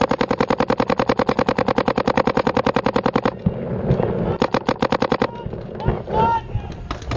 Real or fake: real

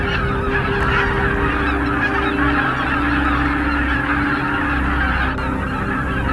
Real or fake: real